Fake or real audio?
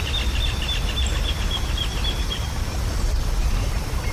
real